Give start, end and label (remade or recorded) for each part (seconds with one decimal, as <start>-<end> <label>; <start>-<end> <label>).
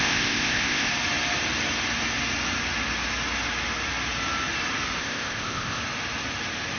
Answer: 0.0-0.9 remade; 0.9-5.0 recorded; 5.0-5.8 remade; 5.8-6.8 recorded